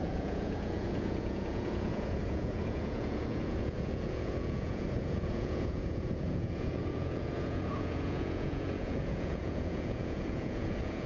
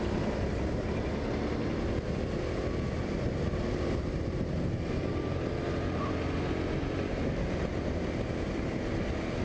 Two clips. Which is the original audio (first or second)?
second